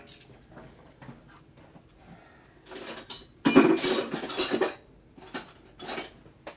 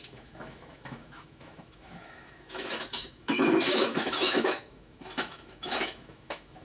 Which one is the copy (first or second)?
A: second